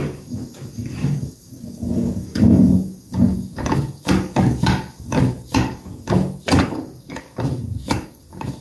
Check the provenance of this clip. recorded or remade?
remade